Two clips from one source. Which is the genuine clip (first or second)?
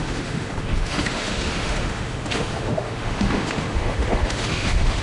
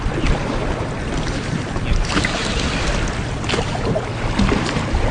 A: second